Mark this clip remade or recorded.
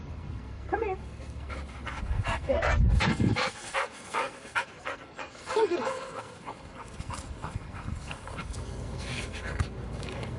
remade